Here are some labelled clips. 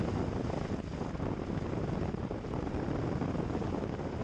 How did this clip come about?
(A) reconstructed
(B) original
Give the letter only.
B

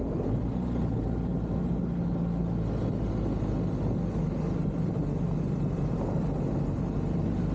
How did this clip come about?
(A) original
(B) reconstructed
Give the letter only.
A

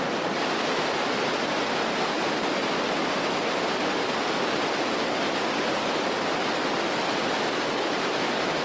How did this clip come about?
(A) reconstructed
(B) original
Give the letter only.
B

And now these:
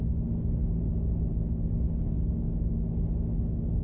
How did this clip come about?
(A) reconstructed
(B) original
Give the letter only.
B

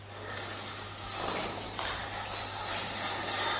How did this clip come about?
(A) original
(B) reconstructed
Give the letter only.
A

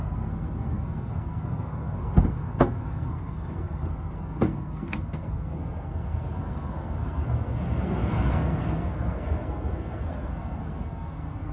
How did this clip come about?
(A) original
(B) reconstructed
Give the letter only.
B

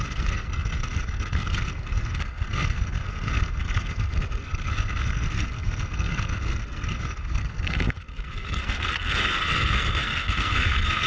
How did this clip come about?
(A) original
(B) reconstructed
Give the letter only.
B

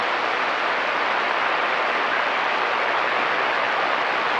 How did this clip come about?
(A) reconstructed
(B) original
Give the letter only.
B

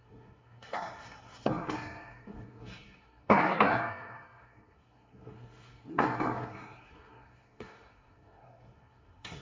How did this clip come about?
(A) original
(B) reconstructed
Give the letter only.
B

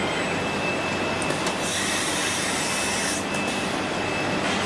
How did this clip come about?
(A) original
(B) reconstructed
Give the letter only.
A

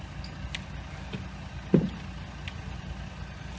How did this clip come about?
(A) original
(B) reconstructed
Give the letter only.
A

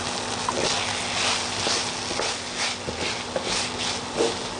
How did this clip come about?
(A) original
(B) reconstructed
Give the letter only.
A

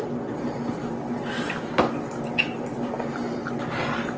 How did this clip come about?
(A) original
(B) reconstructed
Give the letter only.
A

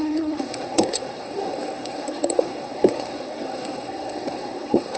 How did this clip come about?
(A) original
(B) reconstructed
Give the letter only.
B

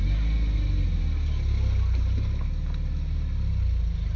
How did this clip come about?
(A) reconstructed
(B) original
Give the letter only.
B